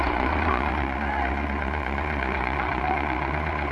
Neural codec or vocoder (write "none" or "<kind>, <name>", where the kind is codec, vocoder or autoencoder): vocoder, Vocos